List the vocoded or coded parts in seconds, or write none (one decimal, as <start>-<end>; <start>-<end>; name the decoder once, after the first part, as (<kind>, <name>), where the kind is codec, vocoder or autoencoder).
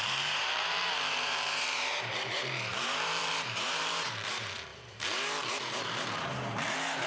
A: 0.0-7.1 (vocoder, BigVGAN v2)